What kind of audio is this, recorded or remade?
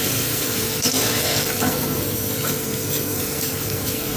remade